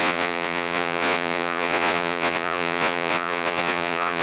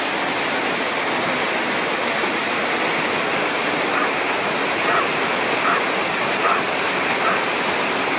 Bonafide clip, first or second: second